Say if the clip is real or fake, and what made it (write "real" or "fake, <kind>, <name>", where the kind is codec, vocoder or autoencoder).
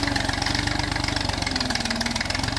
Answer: real